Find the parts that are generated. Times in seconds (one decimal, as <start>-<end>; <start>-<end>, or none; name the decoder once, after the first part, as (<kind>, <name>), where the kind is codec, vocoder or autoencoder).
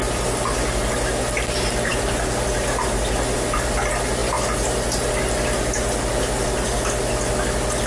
none